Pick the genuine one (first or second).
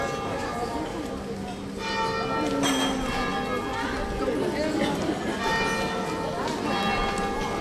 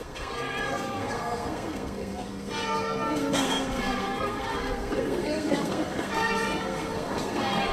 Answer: first